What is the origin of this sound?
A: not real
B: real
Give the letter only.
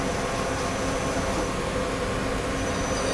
B